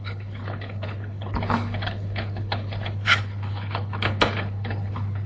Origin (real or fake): fake